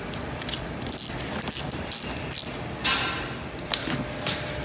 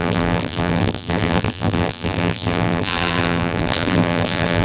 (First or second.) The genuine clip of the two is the first